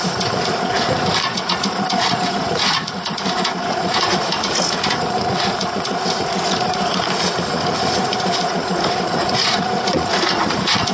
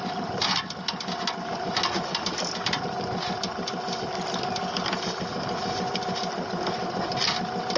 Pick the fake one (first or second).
first